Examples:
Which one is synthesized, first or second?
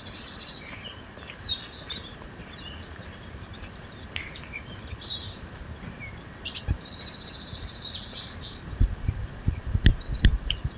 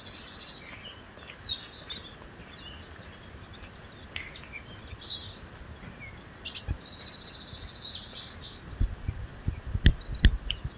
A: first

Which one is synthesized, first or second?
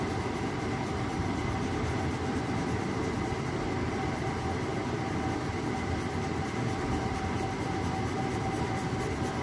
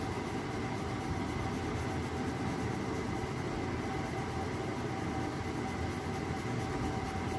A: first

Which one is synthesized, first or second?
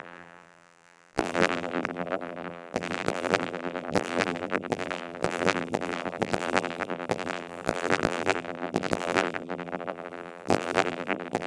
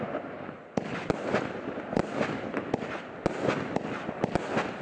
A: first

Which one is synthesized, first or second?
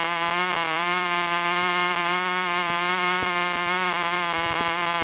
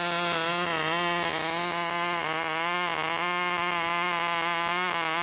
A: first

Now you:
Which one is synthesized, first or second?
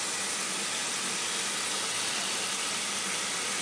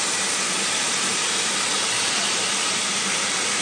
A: second